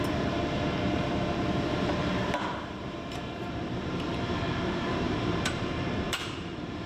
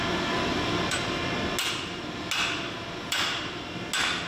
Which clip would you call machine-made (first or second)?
first